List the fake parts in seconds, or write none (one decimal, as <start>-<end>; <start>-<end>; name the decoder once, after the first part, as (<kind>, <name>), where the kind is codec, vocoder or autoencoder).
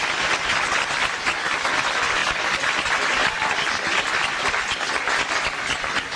none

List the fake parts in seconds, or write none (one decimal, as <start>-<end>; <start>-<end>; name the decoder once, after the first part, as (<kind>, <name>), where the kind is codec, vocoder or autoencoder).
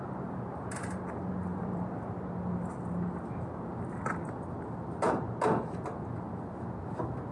1.5-2.2 (vocoder, BigVGAN v2); 3.7-4.4